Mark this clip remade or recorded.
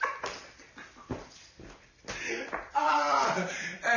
remade